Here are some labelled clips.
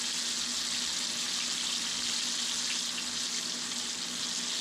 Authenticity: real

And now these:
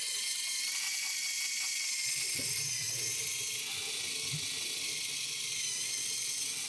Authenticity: real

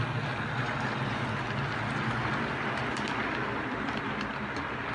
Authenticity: real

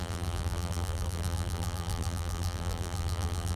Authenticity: fake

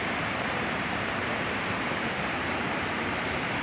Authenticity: fake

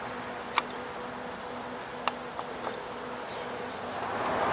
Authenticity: real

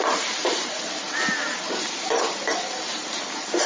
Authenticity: fake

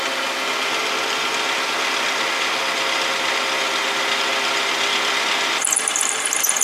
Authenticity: real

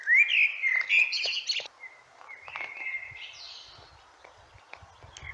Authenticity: real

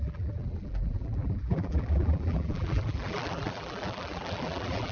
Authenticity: fake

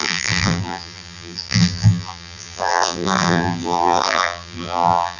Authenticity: fake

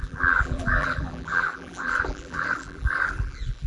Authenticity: fake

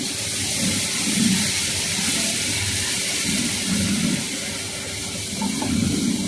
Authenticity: fake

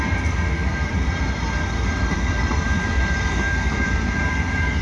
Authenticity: fake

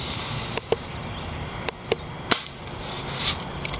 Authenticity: real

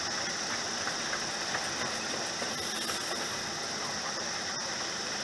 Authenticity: real